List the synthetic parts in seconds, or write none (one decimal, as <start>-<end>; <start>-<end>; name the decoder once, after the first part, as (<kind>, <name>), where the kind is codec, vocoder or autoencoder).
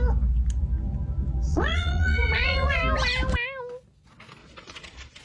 1.5-2.8 (vocoder, Vocos); 4.4-5.2